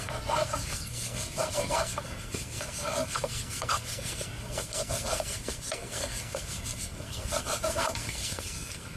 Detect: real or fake fake